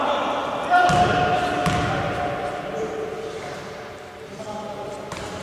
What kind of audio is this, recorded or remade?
recorded